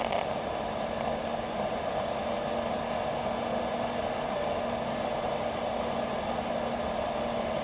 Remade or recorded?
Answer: recorded